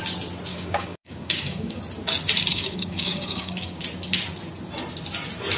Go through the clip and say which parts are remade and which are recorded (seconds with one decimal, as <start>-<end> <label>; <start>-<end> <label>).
0.0-0.5 recorded; 0.5-1.8 remade; 1.8-2.5 recorded; 2.5-3.8 remade; 3.8-5.6 recorded